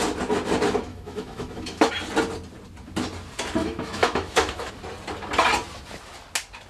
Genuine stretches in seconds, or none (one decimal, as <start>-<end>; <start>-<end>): 0.0-0.9; 1.9-3.6; 4.7-6.7